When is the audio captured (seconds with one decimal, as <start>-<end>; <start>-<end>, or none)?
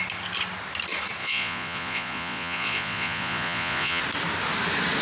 0.0-1.2; 4.0-5.0